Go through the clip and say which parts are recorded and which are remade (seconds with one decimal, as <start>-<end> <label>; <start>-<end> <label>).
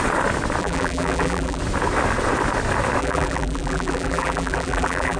0.0-0.6 recorded; 0.6-1.6 remade; 1.6-3.0 recorded; 3.0-5.2 remade